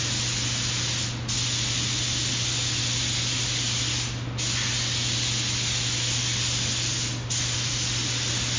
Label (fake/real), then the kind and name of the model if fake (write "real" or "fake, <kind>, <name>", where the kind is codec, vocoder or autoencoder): real